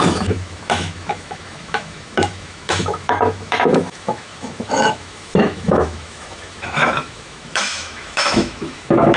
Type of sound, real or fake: fake